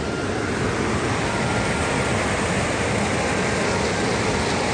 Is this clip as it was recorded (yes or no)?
yes